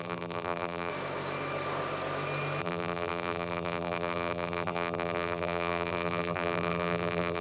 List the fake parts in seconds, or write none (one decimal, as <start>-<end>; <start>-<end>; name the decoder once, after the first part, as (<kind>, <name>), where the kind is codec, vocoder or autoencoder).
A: 0.0-0.9 (vocoder, BigVGAN v2); 2.6-7.4